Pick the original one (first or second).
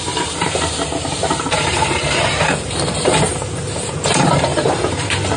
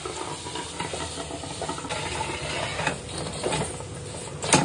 second